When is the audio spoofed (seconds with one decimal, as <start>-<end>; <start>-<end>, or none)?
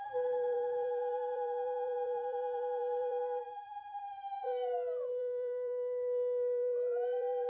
0.0-4.5; 5.2-7.5